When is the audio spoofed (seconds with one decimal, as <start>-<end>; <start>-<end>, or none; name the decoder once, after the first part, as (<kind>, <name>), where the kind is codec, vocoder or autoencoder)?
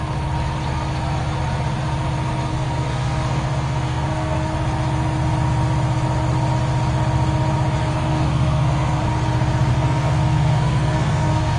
2.5-4.5 (codec, SNAC); 7.8-9.0; 9.7-11.6